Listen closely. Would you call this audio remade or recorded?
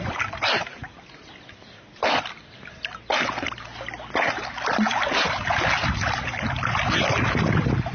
recorded